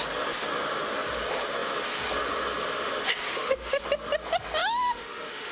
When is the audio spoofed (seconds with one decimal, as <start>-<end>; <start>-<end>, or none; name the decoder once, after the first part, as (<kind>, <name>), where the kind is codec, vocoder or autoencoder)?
3.3-3.8 (autoencoder, DAC-VAE); 4.6-5.5